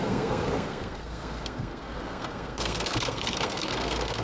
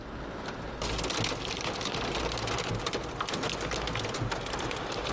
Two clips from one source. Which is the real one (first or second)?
second